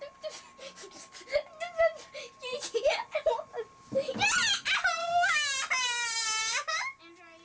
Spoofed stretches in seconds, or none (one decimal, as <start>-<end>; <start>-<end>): 5.0-5.5; 6.4-7.0